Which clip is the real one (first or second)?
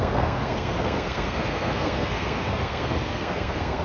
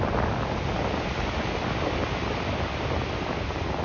second